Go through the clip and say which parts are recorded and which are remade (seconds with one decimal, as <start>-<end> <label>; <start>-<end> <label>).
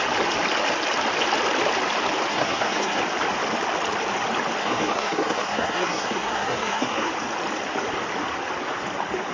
0.0-2.3 recorded; 2.3-3.0 remade; 3.0-4.6 recorded; 4.6-7.1 remade; 7.1-9.3 recorded